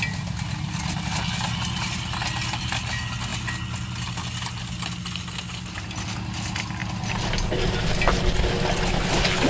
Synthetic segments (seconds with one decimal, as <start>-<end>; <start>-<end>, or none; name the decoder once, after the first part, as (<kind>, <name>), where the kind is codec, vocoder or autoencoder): none